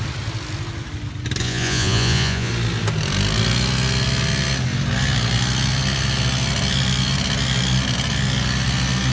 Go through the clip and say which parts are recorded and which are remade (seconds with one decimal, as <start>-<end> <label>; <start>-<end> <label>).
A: 0.0-1.4 recorded; 1.4-2.5 remade; 2.5-9.1 recorded